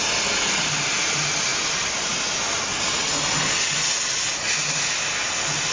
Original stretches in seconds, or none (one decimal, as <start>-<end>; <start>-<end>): 0.0-5.7